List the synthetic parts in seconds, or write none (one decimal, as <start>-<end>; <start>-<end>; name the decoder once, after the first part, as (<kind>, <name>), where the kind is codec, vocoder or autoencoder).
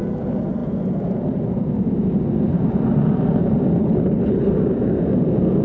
3.8-4.5 (codec, HILCodec)